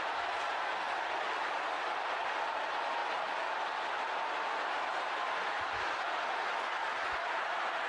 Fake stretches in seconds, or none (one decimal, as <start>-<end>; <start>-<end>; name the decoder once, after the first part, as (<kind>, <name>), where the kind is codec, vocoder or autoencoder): none